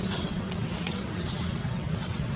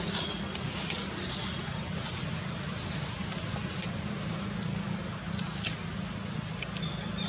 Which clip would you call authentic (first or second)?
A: second